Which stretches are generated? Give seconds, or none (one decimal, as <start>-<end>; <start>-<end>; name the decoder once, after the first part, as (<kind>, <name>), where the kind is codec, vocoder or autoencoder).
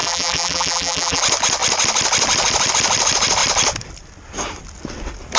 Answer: 0.0-1.2 (vocoder, BigVGAN v2)